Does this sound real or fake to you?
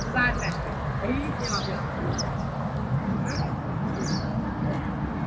real